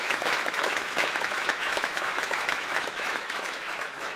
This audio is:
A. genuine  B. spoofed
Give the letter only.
B